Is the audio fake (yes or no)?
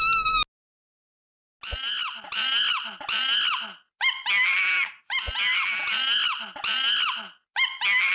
no